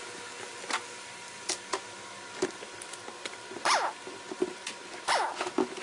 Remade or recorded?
remade